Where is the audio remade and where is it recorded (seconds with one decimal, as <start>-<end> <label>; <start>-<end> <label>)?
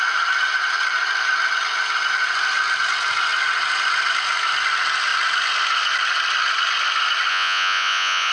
0.0-7.3 recorded; 7.3-8.3 remade